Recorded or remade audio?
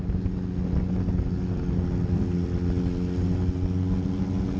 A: recorded